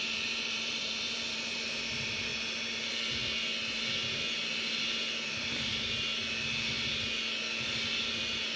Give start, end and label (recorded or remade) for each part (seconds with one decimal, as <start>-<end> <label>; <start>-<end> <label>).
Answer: 0.0-2.3 remade; 2.3-5.2 recorded; 5.2-5.7 remade; 5.7-8.6 recorded